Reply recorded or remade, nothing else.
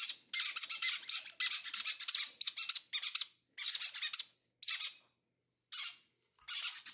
recorded